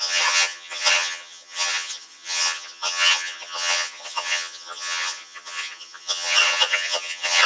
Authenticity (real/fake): fake